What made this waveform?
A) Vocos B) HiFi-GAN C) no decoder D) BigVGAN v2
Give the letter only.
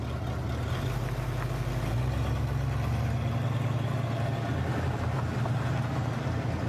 C